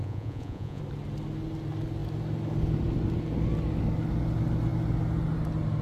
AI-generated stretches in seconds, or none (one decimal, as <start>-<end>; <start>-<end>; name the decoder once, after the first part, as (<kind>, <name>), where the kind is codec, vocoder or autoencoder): 0.0-0.8 (vocoder, Vocos)